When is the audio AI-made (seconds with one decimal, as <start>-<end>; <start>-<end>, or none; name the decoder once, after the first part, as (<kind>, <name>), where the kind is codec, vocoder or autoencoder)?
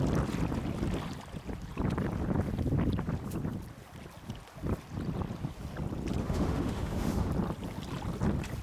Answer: 6.2-7.3 (autoencoder, DAC-VAE)